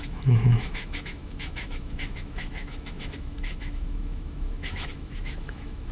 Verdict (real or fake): fake